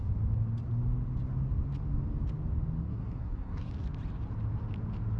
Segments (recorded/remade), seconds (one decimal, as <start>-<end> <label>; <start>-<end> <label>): 0.0-2.8 recorded; 2.8-3.7 remade; 3.7-5.2 recorded